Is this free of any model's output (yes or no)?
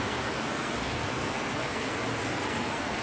no